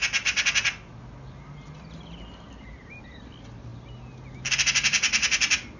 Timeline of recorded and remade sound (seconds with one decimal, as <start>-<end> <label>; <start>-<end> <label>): 0.0-5.8 recorded